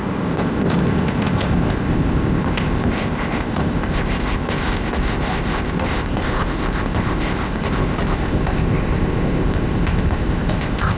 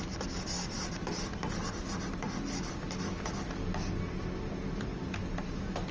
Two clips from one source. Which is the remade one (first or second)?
first